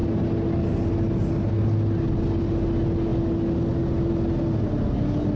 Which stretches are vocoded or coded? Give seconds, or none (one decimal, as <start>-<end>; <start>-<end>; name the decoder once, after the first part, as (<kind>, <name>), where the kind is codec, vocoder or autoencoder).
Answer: none